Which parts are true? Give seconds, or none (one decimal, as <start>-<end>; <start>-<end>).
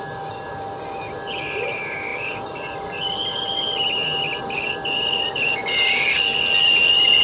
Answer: 0.0-7.2